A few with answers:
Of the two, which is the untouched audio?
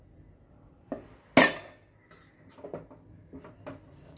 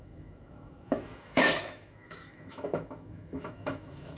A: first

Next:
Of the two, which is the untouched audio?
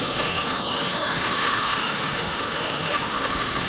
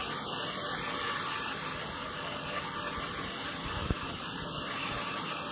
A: second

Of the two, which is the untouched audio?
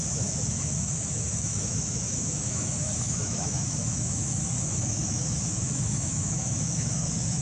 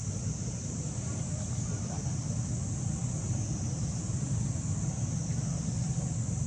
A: second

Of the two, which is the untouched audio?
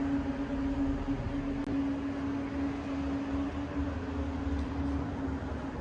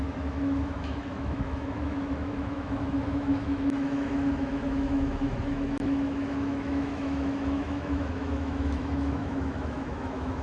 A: first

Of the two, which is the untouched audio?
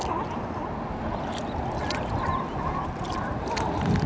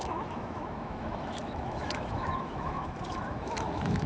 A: first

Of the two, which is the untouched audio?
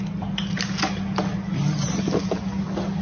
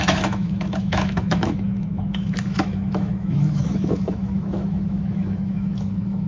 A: first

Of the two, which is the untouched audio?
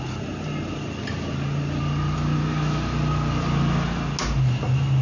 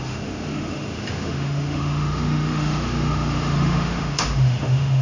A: first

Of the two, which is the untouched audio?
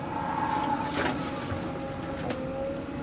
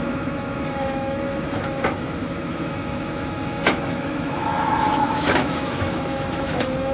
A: first